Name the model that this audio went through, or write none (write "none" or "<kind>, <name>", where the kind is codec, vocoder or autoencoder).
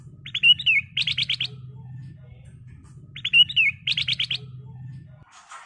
none